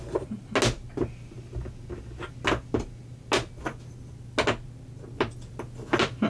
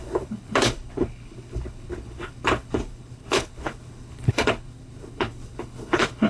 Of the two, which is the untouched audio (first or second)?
first